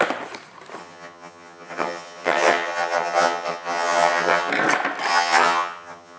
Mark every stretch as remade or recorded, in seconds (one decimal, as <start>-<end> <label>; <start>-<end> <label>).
0.0-0.8 recorded; 0.8-4.5 remade; 4.5-5.1 recorded; 5.1-6.2 remade